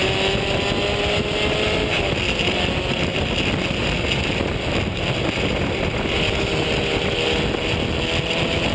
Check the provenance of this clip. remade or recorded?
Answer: recorded